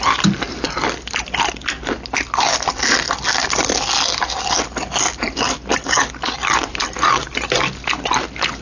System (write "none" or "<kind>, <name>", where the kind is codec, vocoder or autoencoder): none